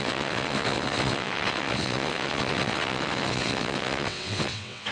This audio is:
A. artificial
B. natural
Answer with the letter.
A